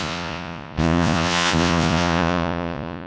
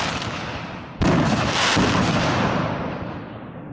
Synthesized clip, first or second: first